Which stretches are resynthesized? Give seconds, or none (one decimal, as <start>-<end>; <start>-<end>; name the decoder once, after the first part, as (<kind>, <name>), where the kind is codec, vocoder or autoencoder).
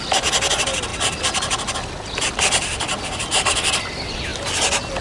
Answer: none